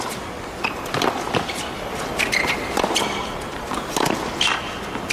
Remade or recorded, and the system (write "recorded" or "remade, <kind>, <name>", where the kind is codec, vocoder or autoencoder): recorded